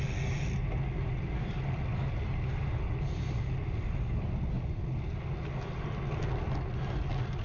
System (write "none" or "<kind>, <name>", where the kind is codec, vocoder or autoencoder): none